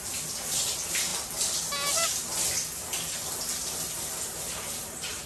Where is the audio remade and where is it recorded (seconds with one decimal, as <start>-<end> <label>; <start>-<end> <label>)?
0.0-5.3 recorded

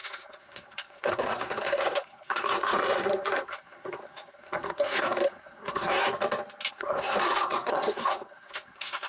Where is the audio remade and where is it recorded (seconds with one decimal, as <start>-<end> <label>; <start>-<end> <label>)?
0.0-6.0 remade; 6.0-6.7 recorded; 6.7-9.1 remade

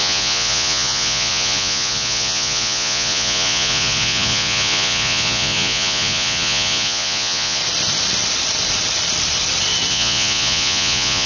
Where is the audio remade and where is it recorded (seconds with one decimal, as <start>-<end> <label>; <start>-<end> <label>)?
0.0-7.6 remade; 7.6-9.9 recorded; 9.9-11.3 remade